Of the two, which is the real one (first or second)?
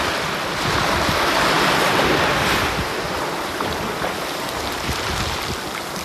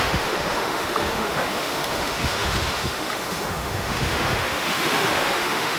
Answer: first